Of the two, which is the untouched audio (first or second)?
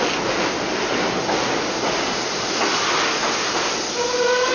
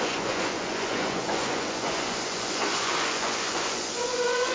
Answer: first